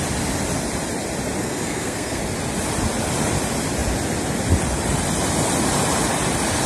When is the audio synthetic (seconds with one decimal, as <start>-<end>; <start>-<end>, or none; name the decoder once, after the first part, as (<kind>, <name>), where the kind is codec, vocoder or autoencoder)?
1.4-2.2 (codec, SNAC)